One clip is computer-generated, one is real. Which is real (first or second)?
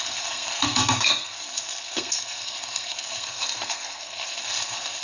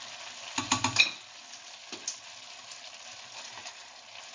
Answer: second